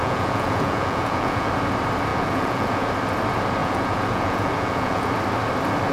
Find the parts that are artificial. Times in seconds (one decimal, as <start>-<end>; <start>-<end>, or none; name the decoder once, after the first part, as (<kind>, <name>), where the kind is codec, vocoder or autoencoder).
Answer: 0.0-1.5 (vocoder, Vocos); 2.1-2.9; 3.6-5.1